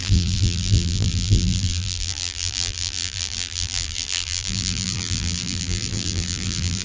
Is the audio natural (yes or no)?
no